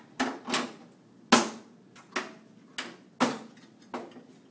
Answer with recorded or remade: recorded